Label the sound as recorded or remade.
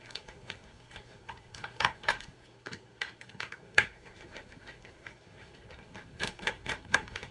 remade